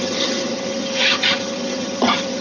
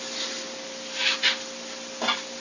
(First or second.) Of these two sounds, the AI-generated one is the first